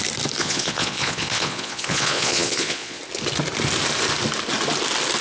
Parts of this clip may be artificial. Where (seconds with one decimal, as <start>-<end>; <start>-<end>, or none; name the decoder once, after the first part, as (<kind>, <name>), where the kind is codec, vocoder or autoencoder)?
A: 0.4-3.0 (vocoder, Vocos)